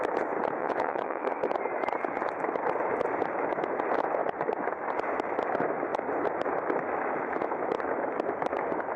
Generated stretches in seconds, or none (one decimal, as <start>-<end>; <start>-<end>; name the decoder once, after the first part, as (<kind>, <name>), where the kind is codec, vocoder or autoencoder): 0.6-1.5 (vocoder, WaveNeXt)

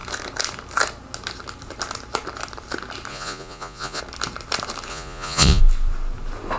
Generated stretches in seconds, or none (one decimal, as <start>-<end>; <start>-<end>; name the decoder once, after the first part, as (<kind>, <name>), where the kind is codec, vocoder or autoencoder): 3.1-4.0 (vocoder, Vocos); 4.9-5.6

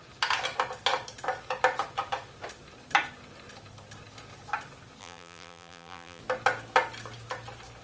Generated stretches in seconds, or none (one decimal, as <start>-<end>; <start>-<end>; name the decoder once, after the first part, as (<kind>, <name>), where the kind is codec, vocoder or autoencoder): 5.0-6.2 (vocoder, BigVGAN v2)

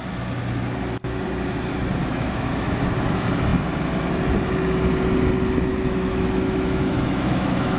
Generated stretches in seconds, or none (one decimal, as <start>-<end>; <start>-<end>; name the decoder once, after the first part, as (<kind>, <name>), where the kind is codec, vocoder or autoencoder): 2.0-2.8 (autoencoder, DAC-VAE); 5.7-7.8

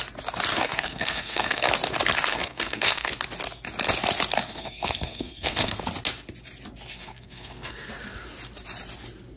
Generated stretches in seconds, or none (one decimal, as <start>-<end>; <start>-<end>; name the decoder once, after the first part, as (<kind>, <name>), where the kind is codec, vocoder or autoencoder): 0.5-1.7 (codec, SNAC); 2.3-3.1; 4.4-5.8; 6.9-7.9